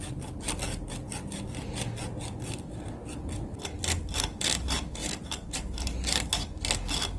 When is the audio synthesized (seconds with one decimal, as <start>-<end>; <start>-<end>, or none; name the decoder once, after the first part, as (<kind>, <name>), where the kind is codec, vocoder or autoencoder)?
5.0-6.6 (vocoder, BigVGAN v2)